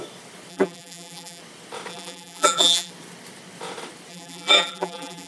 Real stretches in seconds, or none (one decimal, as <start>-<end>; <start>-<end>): 0.0-0.5; 1.4-1.9; 2.9-4.1

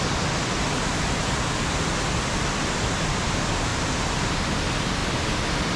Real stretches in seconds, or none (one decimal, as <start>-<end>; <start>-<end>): 0.0-3.7; 4.3-5.8

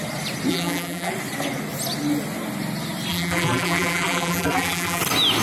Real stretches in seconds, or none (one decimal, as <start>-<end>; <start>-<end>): 0.0-0.5; 1.1-3.1; 5.0-5.4

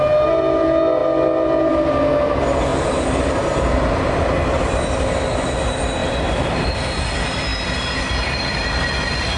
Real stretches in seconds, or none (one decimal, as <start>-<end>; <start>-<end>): 0.0-2.7; 4.6-6.0; 7.0-9.4

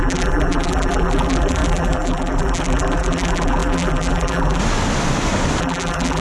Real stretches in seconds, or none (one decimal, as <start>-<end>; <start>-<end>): 4.6-5.6

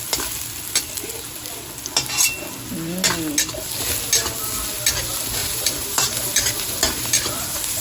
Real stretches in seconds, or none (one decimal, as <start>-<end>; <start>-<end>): 0.0-5.4